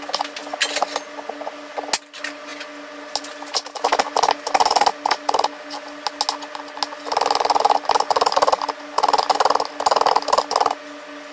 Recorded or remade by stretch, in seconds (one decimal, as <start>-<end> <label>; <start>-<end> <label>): 0.0-11.3 recorded